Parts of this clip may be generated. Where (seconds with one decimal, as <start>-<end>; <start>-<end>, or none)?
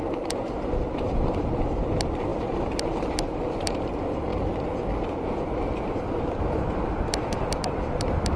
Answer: 0.0-4.3; 5.8-8.4